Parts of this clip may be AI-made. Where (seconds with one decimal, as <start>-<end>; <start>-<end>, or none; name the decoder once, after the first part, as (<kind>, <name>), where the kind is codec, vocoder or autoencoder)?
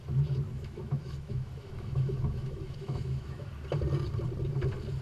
0.5-3.5 (autoencoder, DAC-VAE)